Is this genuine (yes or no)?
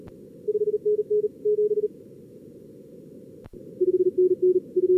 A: yes